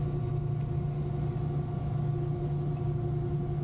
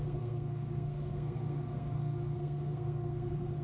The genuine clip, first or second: first